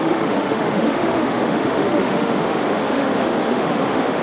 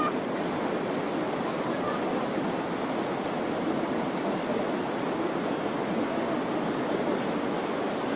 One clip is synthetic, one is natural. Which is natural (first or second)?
second